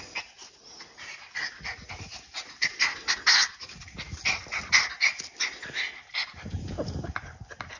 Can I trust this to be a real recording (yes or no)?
yes